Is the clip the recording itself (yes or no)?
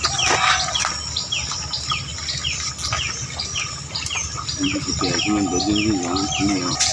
yes